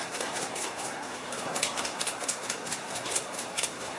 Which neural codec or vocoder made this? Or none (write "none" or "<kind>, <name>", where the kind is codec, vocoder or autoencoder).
codec, SNAC